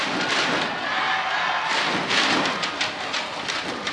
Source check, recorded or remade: recorded